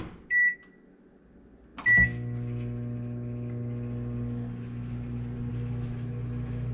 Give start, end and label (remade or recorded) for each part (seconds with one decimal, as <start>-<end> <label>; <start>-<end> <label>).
0.0-6.7 recorded